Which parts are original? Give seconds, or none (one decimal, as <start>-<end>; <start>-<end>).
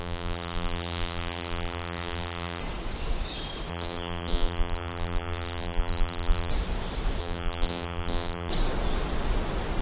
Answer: 2.6-3.7; 6.5-7.2; 8.5-9.8